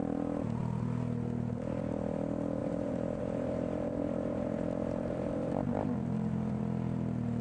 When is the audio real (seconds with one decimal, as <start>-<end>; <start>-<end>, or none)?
0.0-2.6; 6.6-7.4